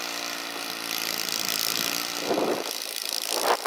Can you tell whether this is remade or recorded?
recorded